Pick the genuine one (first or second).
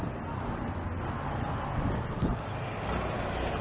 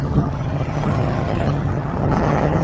first